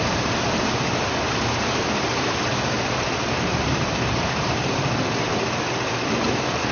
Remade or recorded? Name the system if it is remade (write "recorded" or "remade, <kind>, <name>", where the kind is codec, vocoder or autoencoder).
remade, vocoder, BigVGAN v2